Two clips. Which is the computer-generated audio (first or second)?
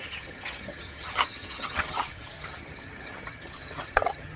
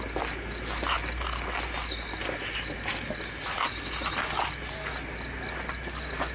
first